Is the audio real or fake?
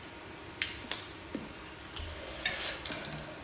real